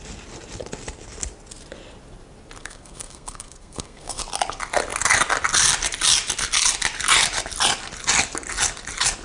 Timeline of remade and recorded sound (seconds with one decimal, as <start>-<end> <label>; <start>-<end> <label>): 0.0-2.6 recorded; 2.6-4.2 remade; 4.2-9.2 recorded